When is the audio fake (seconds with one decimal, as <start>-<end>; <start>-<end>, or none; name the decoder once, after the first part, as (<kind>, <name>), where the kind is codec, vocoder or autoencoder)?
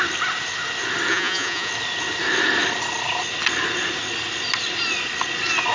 1.1-1.7 (vocoder, Vocos)